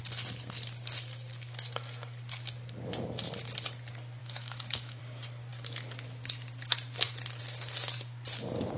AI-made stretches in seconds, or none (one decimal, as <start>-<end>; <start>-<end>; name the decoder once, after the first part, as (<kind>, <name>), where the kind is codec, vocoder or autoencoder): 4.2-5.0 (autoencoder, DAC-VAE)